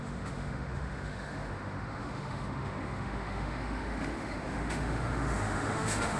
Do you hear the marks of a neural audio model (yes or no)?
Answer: yes